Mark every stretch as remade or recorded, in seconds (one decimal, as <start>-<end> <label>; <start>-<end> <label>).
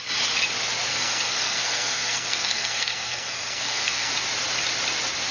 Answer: 0.0-0.9 recorded; 0.9-4.1 remade; 4.1-5.3 recorded